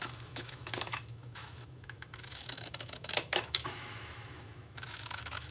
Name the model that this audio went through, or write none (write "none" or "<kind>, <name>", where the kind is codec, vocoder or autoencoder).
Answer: autoencoder, DAC-VAE